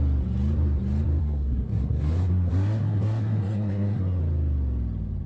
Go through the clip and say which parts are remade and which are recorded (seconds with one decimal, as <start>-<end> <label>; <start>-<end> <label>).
0.0-1.2 recorded; 1.2-4.2 remade; 4.2-5.3 recorded